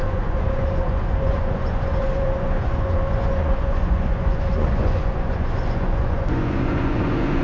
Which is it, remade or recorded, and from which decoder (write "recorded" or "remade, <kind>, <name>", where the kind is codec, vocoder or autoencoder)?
remade, vocoder, Vocos